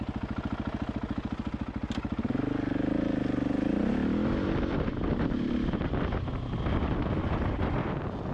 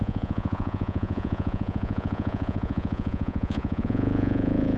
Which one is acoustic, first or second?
first